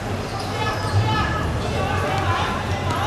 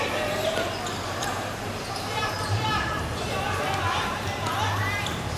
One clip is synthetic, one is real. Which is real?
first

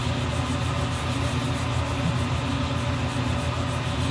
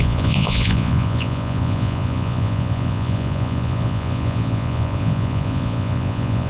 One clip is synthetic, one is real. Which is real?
first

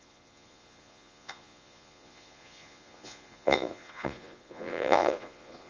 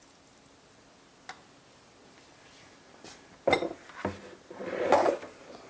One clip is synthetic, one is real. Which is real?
second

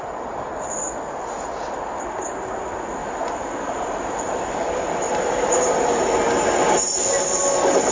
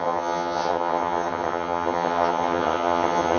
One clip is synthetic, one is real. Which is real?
first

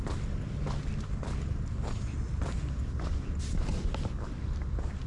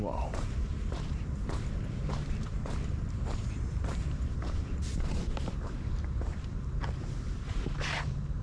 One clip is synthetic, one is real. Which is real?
first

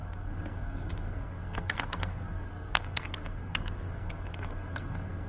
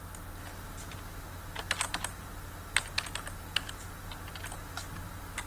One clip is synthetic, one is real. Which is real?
second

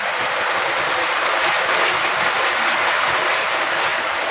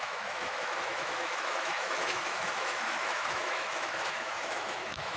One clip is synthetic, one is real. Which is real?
first